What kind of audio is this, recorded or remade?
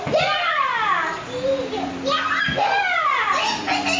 recorded